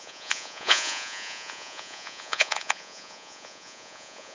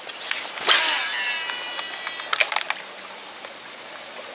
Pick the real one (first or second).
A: second